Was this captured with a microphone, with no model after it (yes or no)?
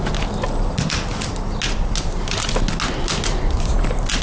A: yes